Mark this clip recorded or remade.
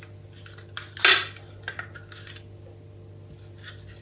recorded